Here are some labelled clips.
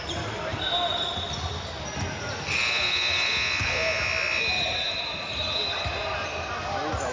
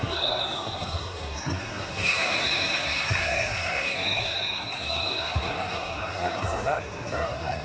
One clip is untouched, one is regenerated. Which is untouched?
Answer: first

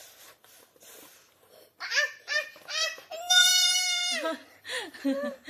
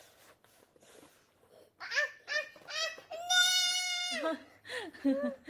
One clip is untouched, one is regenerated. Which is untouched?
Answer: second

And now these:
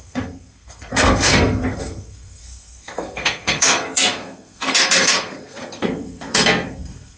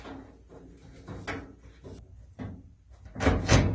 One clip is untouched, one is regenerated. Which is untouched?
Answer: second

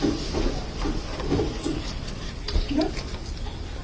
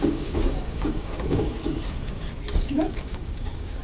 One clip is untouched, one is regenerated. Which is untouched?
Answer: first